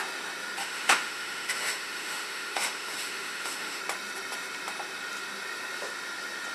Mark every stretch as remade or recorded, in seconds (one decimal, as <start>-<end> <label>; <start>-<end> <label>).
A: 0.0-0.6 recorded; 0.6-3.8 remade; 3.8-6.5 recorded